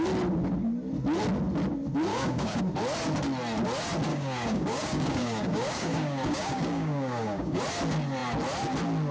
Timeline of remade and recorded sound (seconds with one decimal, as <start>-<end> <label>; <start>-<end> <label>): 0.0-2.1 recorded; 2.1-2.6 remade; 2.6-4.1 recorded; 4.1-7.6 remade; 7.6-9.1 recorded